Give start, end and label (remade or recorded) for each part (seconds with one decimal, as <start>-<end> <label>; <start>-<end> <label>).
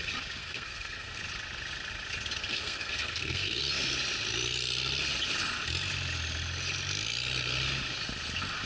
0.0-0.4 recorded; 0.4-1.2 remade; 1.2-2.4 recorded; 2.4-3.6 remade; 3.6-8.7 recorded